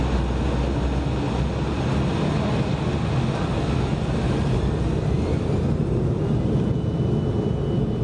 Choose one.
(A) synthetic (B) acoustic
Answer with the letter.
B